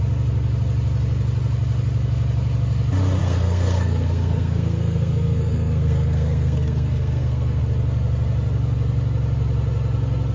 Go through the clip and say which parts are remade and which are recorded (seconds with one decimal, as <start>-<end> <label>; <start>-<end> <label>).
0.0-3.2 recorded; 3.2-7.6 remade; 7.6-10.3 recorded